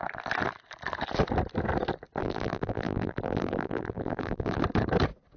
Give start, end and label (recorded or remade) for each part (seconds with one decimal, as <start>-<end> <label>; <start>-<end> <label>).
0.0-2.2 recorded; 2.2-4.6 remade; 4.6-5.4 recorded